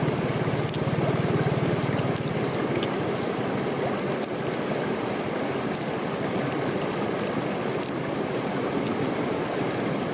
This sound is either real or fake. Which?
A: real